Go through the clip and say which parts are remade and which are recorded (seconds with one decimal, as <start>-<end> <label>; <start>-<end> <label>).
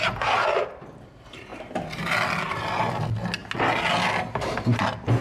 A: 0.0-5.2 recorded